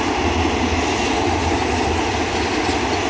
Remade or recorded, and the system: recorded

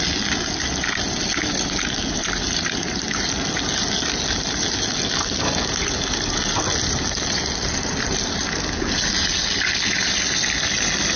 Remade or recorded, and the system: recorded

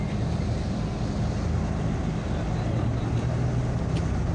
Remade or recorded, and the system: recorded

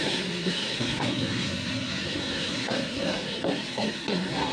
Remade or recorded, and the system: remade, codec, SNAC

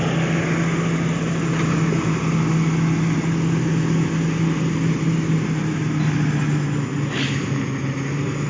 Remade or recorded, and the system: recorded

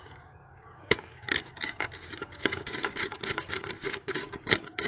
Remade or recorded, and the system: remade, codec, DAC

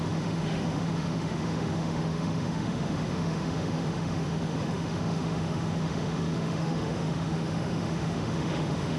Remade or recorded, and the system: remade, autoencoder, DAC-VAE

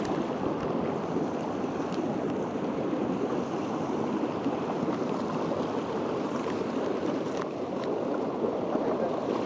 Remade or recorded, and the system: recorded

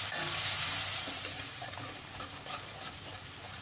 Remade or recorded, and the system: remade, vocoder, BigVGAN v2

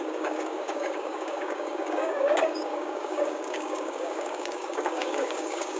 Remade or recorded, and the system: remade, codec, DAC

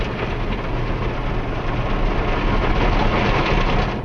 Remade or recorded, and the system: recorded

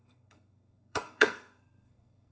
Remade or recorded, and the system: remade, codec, SNAC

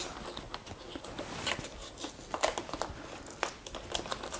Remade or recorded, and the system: recorded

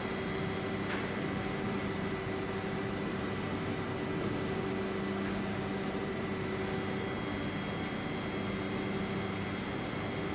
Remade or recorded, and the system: recorded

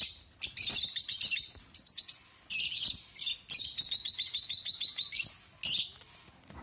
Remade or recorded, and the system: recorded